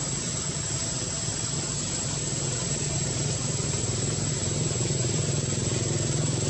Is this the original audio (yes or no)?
no